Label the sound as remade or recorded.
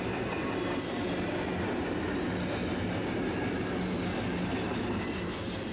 recorded